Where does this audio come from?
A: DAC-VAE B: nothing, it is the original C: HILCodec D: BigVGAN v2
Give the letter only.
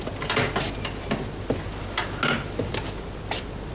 B